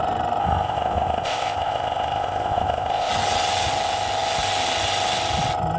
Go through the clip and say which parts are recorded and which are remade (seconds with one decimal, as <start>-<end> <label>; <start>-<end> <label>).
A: 0.0-0.4 recorded; 0.4-3.1 remade; 3.1-5.8 recorded